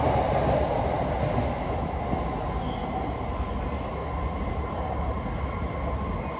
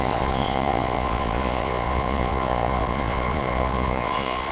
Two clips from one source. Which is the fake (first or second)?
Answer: second